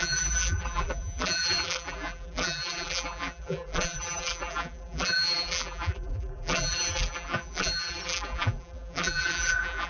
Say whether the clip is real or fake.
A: fake